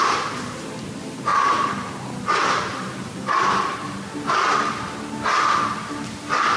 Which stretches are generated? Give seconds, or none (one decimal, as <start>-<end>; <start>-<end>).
1.3-1.9; 2.7-3.7

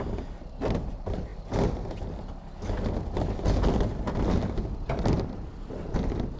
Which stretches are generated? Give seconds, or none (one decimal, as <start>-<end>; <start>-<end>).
0.0-1.3; 5.1-6.4

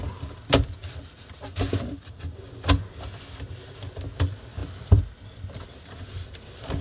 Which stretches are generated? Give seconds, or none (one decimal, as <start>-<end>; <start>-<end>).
4.6-6.8

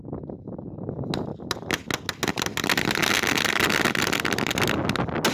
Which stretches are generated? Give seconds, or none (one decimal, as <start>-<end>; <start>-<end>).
none

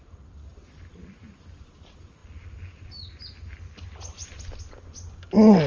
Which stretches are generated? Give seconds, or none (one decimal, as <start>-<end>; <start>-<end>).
none

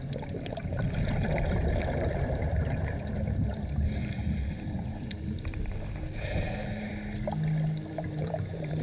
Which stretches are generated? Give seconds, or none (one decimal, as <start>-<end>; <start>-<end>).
0.0-6.9; 7.9-8.8

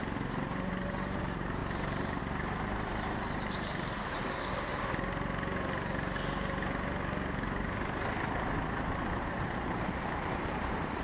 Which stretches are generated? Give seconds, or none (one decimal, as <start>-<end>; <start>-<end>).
0.0-1.6; 2.2-4.7; 9.2-11.0